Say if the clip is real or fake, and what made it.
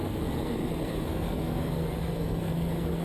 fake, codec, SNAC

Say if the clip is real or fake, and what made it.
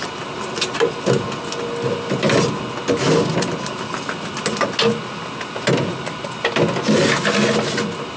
real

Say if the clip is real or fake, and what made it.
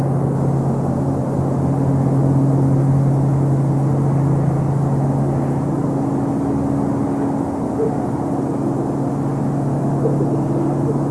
real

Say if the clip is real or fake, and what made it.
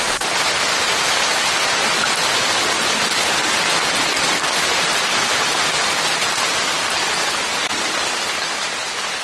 real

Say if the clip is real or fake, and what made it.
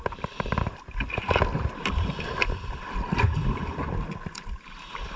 real